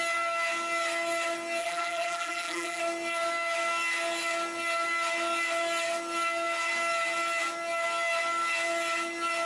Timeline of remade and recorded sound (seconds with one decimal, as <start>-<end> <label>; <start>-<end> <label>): 0.0-1.6 recorded; 1.6-2.8 remade; 2.8-9.5 recorded